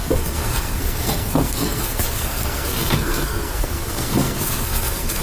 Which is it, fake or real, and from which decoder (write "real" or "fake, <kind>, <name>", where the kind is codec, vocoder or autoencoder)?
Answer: fake, codec, SNAC